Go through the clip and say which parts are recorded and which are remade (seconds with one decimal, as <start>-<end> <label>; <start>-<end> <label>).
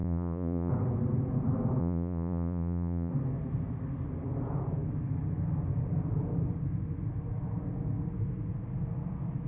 0.0-0.7 remade; 0.7-1.8 recorded; 1.8-3.1 remade; 3.1-9.5 recorded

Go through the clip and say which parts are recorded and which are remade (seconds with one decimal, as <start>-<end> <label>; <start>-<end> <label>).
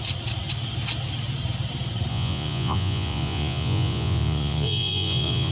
0.0-2.1 recorded; 2.1-5.5 remade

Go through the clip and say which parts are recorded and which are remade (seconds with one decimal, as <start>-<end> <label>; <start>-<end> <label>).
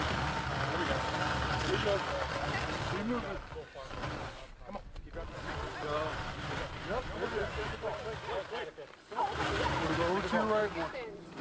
0.0-6.1 recorded; 6.1-9.2 remade; 9.2-10.6 recorded; 10.6-11.4 remade